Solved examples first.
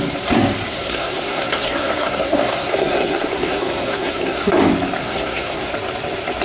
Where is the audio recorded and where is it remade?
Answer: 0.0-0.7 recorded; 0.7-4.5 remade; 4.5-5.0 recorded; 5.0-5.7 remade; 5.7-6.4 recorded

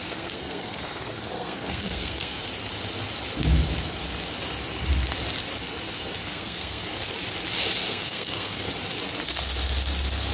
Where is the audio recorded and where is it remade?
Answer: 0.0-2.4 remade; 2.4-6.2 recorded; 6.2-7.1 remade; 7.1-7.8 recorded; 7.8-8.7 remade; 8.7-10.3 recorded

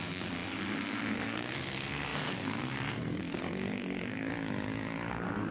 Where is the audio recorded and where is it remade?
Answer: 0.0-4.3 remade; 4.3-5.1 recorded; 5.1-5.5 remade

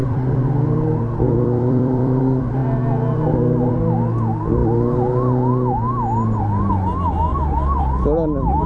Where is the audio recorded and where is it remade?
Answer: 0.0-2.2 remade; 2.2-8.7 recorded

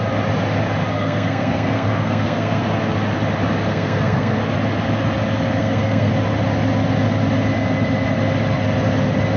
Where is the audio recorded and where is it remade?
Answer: 0.0-0.9 recorded; 0.9-2.6 remade; 2.6-3.7 recorded; 3.7-4.4 remade; 4.4-5.6 recorded; 5.6-6.1 remade; 6.1-9.4 recorded

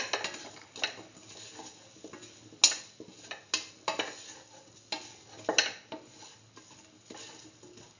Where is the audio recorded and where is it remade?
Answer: 0.0-8.0 recorded